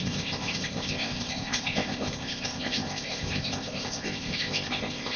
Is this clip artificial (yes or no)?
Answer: yes